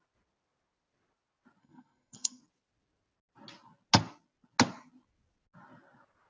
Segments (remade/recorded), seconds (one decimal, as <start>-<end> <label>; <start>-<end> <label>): 0.0-1.6 recorded; 1.6-2.4 remade; 2.4-6.3 recorded